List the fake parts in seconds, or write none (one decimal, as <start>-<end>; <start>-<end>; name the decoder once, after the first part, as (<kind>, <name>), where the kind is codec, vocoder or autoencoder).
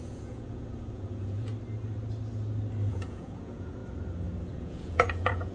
0.0-1.5 (vocoder, Vocos); 2.9-3.8; 4.5-5.5